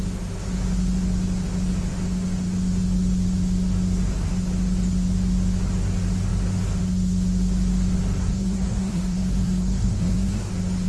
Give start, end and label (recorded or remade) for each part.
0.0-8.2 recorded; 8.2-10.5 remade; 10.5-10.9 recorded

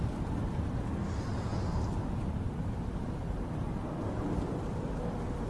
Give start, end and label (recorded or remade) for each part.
0.0-5.5 recorded

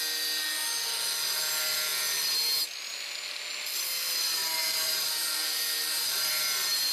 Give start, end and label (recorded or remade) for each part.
0.0-4.6 recorded; 4.6-6.3 remade; 6.3-6.9 recorded

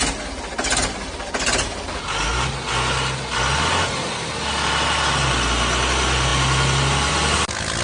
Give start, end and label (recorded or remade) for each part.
0.0-7.8 recorded

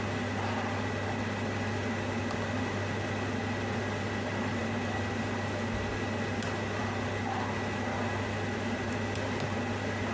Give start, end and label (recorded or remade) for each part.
0.0-10.1 recorded

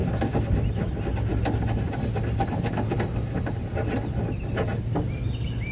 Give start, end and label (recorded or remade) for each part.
0.0-5.7 recorded

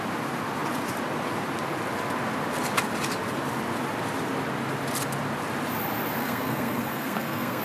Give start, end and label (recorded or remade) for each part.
0.0-6.2 recorded; 6.2-7.6 remade